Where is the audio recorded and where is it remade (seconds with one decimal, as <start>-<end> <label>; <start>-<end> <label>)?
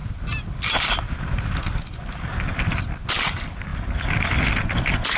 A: 0.0-5.2 recorded